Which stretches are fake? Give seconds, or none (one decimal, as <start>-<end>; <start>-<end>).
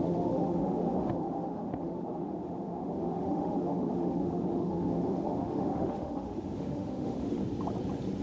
0.0-7.4